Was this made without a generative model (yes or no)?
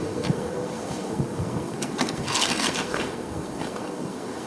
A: no